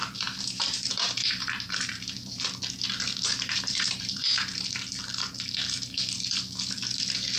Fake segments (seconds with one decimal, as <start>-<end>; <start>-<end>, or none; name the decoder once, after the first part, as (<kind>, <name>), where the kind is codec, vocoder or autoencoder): 0.0-2.4 (vocoder, BigVGAN v2); 3.3-5.0